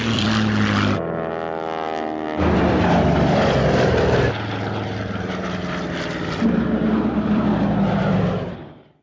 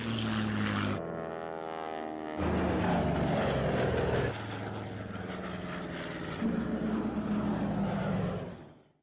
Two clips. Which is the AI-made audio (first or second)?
first